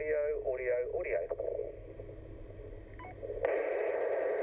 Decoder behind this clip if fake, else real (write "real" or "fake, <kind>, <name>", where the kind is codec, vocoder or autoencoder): real